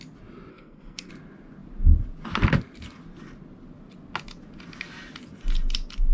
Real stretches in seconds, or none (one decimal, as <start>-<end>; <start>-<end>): 0.0-0.5; 1.1-6.1